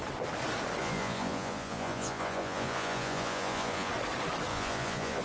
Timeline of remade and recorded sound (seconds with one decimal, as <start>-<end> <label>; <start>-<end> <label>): 0.0-0.8 recorded; 0.8-3.9 remade; 3.9-4.5 recorded; 4.5-5.2 remade